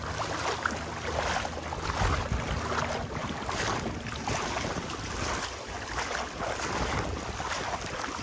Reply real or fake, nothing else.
real